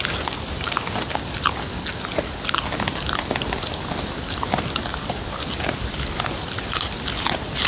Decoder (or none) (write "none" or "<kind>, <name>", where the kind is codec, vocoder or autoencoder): none